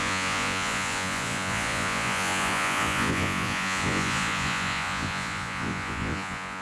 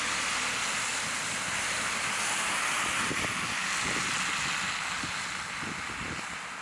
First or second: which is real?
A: second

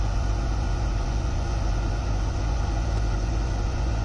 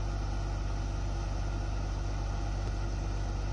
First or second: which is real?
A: second